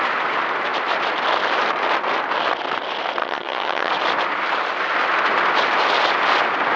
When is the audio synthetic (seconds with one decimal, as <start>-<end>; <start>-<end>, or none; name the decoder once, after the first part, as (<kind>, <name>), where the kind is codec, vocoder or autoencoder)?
3.2-3.9 (vocoder, HiFi-GAN)